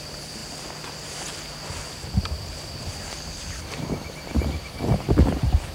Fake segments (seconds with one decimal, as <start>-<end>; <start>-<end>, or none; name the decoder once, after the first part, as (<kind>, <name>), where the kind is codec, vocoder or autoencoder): none